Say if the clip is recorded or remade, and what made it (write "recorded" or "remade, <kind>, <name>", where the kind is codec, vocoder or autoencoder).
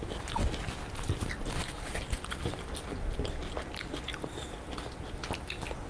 recorded